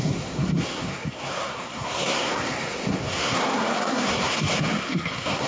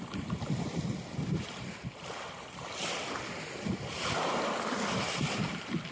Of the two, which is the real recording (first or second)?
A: second